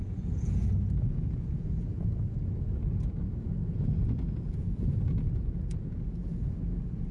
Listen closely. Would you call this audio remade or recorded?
remade